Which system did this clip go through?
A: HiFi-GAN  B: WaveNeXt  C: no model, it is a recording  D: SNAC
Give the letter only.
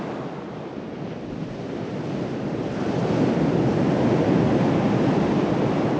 C